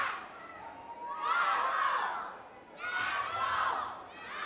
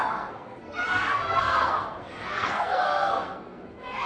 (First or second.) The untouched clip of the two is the first